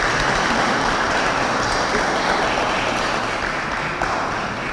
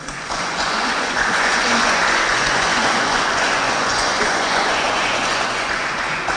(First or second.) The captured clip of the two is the first